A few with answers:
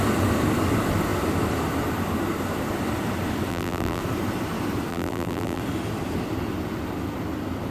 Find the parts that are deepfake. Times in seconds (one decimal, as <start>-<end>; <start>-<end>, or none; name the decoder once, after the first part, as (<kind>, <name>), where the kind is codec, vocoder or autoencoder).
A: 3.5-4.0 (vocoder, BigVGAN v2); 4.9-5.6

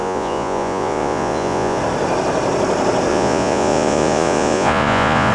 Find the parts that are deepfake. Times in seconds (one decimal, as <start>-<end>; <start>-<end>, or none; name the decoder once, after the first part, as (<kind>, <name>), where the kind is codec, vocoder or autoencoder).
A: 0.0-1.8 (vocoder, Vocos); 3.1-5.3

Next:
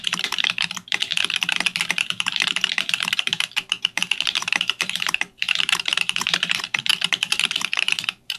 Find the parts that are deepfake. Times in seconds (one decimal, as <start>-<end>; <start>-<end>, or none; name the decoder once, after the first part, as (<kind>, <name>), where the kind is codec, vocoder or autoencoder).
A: 0.0-1.1 (vocoder, BigVGAN v2); 1.9-6.9; 7.5-8.4

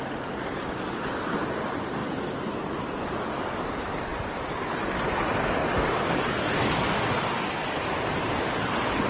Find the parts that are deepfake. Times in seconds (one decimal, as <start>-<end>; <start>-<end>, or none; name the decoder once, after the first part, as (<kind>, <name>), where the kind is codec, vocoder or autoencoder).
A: none

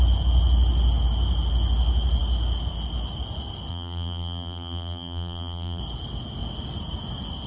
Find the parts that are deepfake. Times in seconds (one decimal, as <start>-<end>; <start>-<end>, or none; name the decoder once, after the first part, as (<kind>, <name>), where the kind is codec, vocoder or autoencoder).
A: 3.7-5.8 (vocoder, BigVGAN v2)

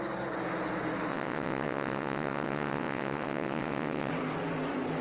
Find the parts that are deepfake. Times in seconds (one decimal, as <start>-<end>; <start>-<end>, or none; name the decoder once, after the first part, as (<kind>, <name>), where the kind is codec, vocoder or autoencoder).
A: 1.1-4.1 (vocoder, WaveNeXt)